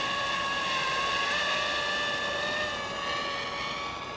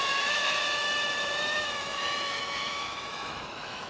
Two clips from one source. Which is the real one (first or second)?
first